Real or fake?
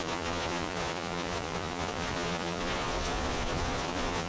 fake